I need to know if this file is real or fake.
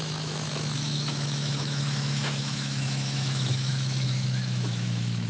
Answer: fake